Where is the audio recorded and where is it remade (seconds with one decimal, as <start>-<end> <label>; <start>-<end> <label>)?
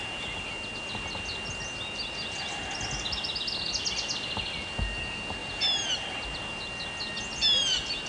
0.0-8.1 recorded